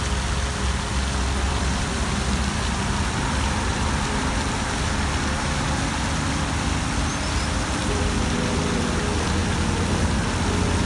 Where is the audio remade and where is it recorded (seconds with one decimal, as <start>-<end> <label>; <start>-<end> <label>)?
0.0-1.5 recorded; 1.5-4.6 remade; 4.6-7.8 recorded; 7.8-8.8 remade; 8.8-10.9 recorded